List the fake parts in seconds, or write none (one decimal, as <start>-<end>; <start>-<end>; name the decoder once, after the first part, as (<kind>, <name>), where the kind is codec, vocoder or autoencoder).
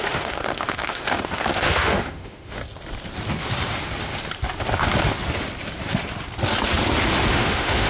0.0-2.6 (autoencoder, DAC-VAE); 7.3-7.9